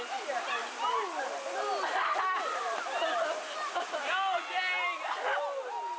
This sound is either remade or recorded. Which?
recorded